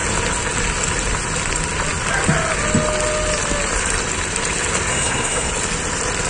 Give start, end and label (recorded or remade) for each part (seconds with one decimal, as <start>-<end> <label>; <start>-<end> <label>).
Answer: 0.0-4.9 recorded; 4.9-5.5 remade; 5.5-6.3 recorded